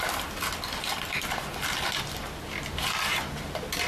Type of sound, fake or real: real